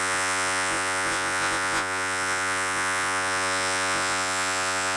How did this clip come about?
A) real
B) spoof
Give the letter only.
B